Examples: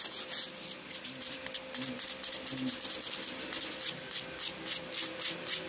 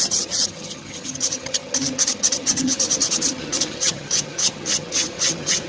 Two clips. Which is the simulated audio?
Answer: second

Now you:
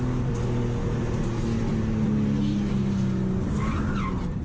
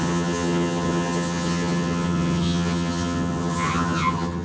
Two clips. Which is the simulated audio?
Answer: second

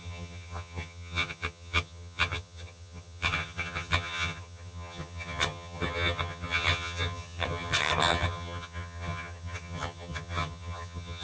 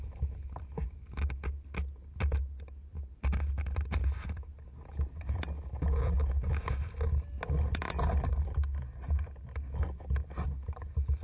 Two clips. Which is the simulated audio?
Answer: first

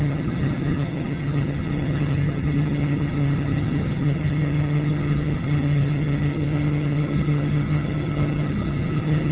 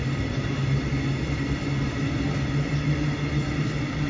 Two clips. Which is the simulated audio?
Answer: first